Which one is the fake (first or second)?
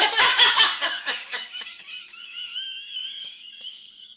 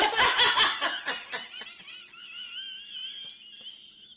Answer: first